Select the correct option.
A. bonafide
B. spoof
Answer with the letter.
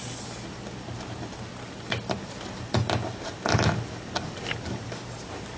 A